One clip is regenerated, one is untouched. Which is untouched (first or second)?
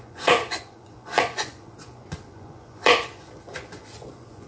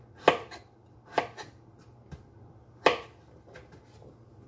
second